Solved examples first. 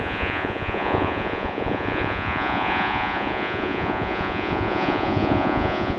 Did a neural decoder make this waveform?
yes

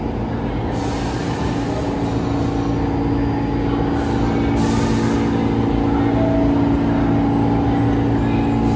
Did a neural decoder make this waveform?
no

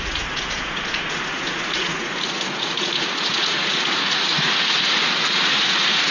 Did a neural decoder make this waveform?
yes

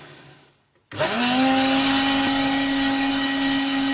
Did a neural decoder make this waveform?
no